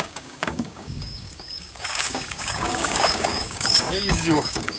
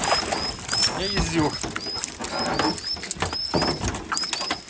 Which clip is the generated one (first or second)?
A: first